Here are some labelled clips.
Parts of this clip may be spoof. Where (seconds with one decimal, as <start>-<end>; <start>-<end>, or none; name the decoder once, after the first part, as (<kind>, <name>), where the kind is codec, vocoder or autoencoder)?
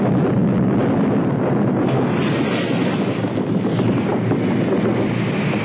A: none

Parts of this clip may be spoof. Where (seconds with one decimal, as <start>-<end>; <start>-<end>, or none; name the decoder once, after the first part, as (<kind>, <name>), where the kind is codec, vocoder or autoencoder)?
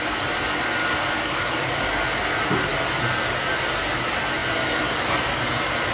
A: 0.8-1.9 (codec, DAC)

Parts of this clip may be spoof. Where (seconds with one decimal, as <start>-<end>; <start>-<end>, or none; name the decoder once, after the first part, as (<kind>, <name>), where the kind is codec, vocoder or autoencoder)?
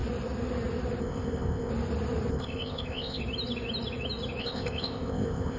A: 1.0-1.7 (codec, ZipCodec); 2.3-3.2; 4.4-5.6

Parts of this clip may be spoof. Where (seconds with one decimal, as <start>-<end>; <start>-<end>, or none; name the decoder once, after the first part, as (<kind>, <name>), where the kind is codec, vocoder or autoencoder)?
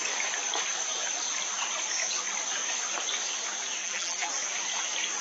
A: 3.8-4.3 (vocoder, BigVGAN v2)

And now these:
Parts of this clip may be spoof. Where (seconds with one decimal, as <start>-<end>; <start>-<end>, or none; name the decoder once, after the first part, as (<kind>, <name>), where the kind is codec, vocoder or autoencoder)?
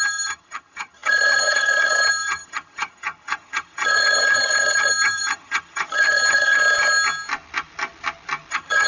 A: 0.0-6.6 (vocoder, HiFi-GAN); 8.5-8.9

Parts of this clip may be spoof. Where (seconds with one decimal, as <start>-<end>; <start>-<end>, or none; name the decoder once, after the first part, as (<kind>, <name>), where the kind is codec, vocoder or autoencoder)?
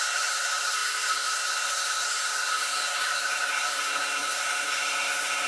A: 0.0-5.5 (codec, SNAC)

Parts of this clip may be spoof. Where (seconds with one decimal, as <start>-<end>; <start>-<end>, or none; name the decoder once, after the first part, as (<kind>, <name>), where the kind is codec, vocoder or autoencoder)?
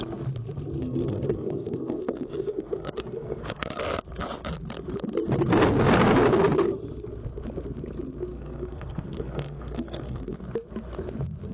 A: 0.8-3.8 (codec, SNAC); 8.3-10.4